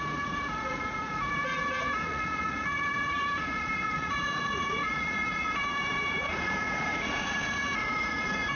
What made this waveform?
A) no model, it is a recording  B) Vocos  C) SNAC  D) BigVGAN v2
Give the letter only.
B